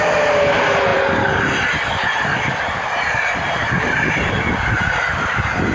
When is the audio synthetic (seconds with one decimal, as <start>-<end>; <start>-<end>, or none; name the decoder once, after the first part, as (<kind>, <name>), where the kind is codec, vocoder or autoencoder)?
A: 0.9-4.3 (vocoder, BigVGAN v2)